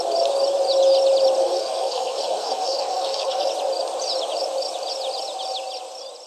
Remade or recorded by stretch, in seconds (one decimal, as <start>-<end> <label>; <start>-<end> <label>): 0.0-1.4 recorded; 1.4-3.5 remade; 3.5-6.3 recorded